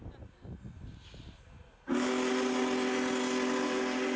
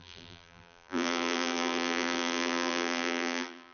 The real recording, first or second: first